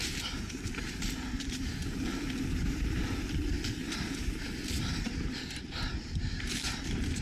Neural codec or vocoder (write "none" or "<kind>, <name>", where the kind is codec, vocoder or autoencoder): vocoder, BigVGAN v2